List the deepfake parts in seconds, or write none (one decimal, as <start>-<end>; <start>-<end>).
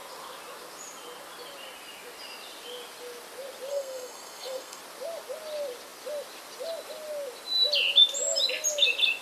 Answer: 3.7-4.8